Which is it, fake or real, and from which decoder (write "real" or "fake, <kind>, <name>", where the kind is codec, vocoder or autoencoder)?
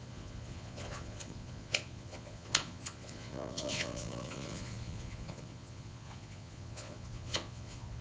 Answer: fake, vocoder, Vocos